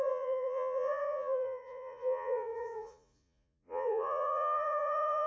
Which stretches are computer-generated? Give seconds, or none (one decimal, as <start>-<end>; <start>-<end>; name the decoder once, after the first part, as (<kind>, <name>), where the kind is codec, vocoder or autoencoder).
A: 0.0-5.3 (vocoder, Vocos)